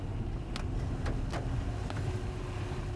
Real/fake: real